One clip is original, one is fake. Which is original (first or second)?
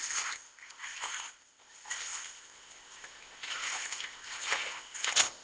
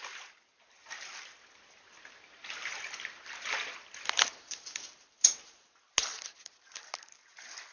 second